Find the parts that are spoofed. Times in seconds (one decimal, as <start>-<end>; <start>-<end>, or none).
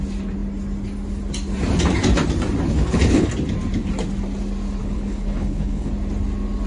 2.7-3.3; 4.8-5.9